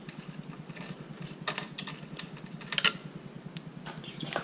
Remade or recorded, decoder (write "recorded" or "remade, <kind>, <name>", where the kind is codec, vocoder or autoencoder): recorded